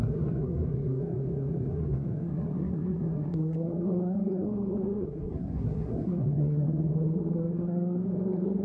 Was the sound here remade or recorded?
remade